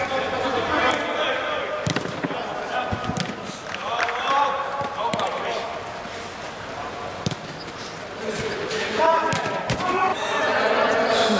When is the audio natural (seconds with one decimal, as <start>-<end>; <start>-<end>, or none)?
0.0-3.8; 5.1-10.1; 10.6-11.4